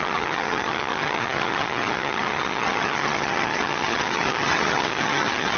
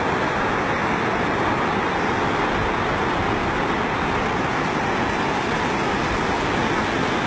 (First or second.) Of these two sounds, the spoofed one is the first